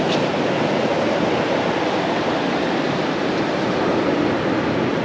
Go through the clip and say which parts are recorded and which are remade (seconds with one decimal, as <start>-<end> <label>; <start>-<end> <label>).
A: 0.0-5.0 recorded